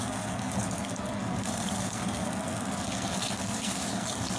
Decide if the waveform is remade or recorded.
remade